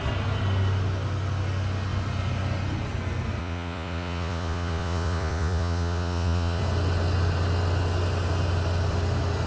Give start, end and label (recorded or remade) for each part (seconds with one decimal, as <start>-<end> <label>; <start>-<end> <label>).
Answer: 0.0-3.4 recorded; 3.4-6.6 remade; 6.6-9.5 recorded